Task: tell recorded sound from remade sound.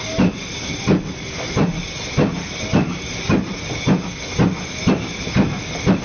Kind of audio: recorded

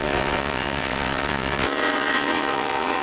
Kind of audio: remade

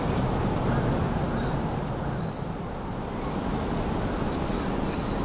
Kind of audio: recorded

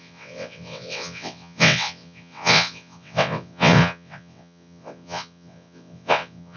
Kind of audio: remade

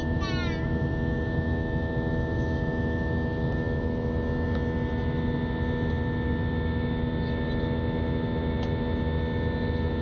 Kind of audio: recorded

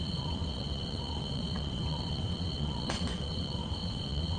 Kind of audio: remade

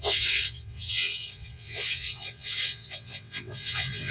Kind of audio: remade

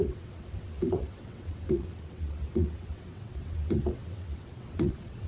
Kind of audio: remade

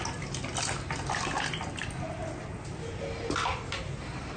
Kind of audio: recorded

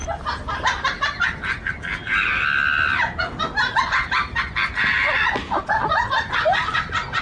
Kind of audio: recorded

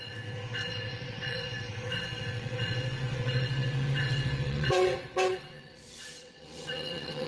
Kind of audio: remade